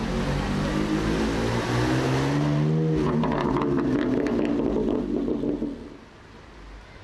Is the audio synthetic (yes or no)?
no